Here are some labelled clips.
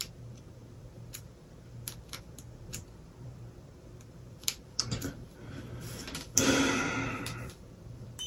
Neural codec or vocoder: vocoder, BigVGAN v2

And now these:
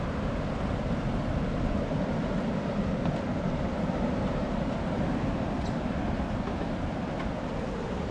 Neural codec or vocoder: none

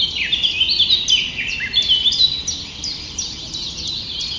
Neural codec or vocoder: none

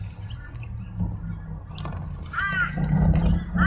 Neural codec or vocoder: none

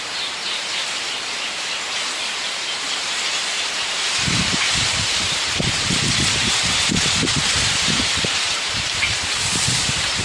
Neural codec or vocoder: vocoder, BigVGAN v2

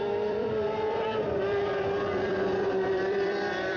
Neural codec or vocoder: vocoder, BigVGAN v2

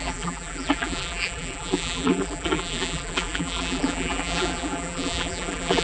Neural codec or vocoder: vocoder, BigVGAN v2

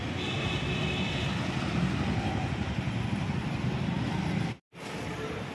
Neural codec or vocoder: none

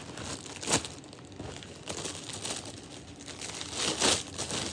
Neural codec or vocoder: none